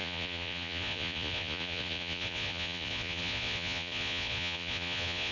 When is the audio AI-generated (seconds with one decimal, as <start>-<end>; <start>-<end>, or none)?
0.0-5.3